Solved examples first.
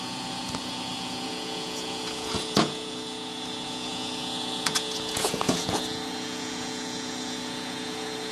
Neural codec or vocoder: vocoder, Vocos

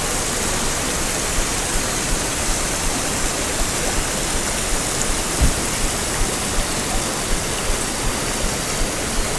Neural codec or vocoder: none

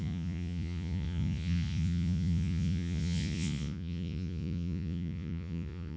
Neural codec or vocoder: vocoder, Vocos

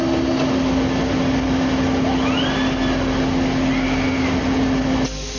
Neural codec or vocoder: none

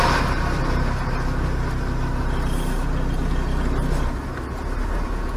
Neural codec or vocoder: none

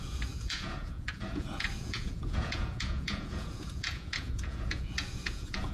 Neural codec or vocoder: vocoder, Vocos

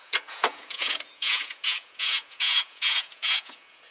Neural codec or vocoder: vocoder, Vocos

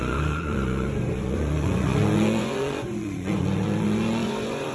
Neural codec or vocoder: vocoder, Vocos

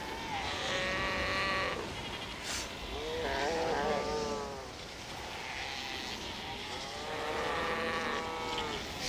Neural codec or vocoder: none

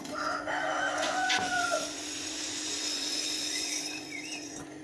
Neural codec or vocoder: vocoder, Vocos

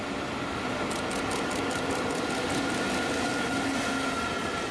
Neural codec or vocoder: none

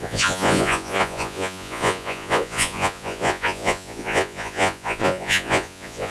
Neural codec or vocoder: vocoder, Vocos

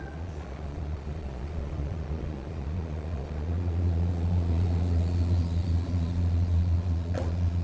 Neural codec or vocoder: vocoder, Vocos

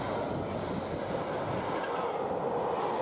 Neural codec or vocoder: none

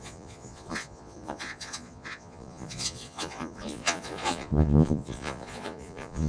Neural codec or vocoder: vocoder, Vocos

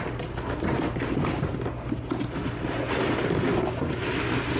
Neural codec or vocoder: none